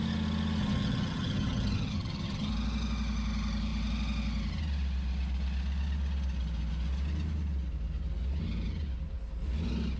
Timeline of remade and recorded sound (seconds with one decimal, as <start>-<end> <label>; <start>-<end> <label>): 0.0-0.6 recorded; 0.6-2.5 remade; 2.5-10.0 recorded